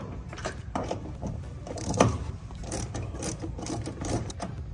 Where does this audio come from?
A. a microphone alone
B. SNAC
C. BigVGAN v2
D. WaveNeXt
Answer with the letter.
C